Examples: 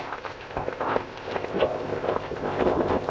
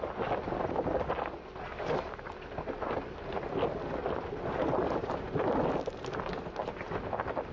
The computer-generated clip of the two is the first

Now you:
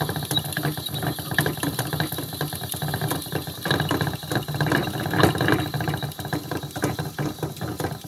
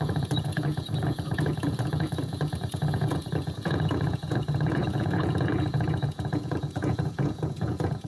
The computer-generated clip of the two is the second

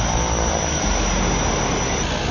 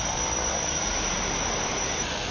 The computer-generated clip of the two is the second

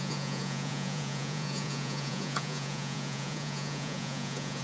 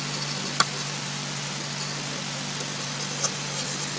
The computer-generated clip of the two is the first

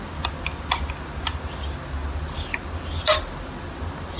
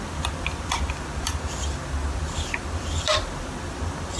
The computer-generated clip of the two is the second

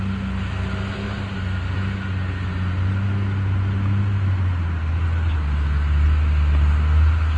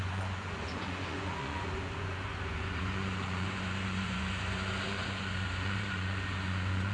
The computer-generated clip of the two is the second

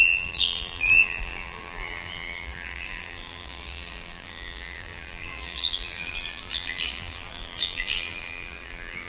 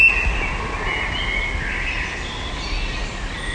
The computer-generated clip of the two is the first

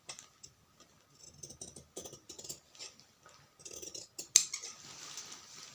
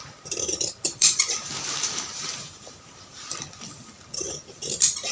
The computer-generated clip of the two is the second